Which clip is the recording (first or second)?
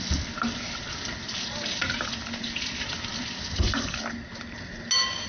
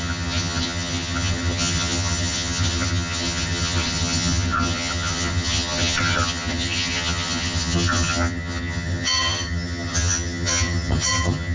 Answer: first